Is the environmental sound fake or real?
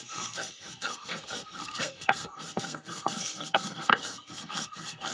fake